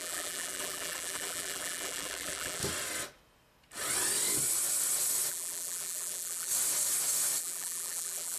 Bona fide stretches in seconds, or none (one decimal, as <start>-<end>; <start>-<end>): 2.6-5.3; 6.5-7.4